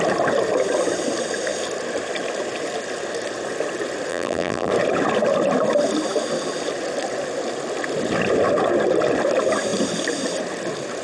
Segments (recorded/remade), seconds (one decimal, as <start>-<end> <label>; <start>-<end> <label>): 0.0-4.1 recorded; 4.1-4.7 remade; 4.7-11.0 recorded